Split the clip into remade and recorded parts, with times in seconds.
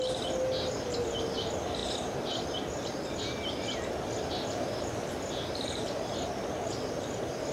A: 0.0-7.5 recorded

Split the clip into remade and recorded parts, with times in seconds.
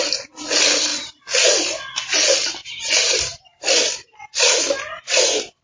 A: 0.0-5.6 recorded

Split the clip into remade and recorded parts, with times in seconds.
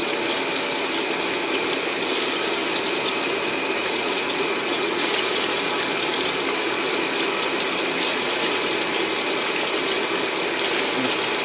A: 0.0-3.8 recorded; 3.8-5.8 remade; 5.8-8.1 recorded; 8.1-8.7 remade; 8.7-11.4 recorded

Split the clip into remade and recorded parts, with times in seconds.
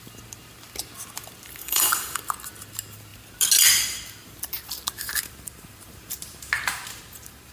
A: 0.0-1.6 recorded; 1.6-2.2 remade; 2.2-7.5 recorded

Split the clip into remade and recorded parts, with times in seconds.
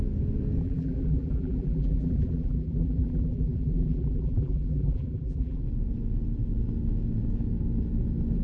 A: 0.0-0.6 recorded; 0.6-5.6 remade; 5.6-8.4 recorded